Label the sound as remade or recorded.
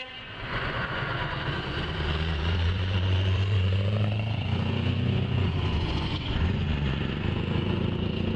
remade